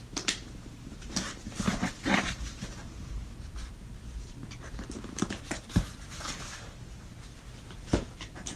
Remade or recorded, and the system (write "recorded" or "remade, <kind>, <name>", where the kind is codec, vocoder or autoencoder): remade, vocoder, BigVGAN v2